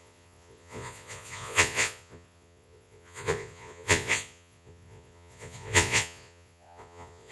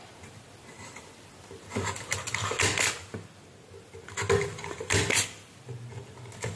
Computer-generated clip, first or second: first